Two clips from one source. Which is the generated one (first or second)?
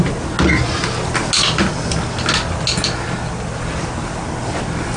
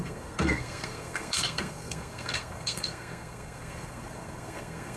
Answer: second